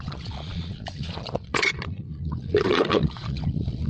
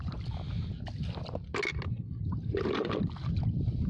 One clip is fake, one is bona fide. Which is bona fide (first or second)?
second